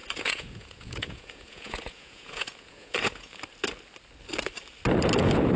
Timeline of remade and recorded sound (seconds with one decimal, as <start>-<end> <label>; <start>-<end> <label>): 0.0-3.4 remade; 3.4-5.6 recorded